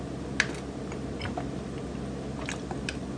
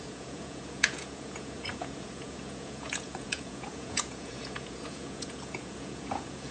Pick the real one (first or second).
first